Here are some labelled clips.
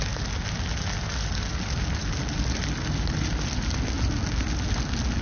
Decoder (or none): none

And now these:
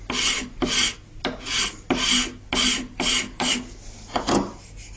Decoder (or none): none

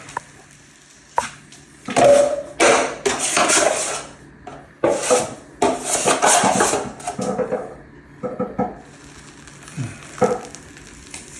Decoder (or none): none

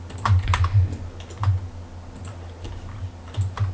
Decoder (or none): none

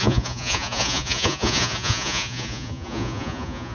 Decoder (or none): vocoder, Vocos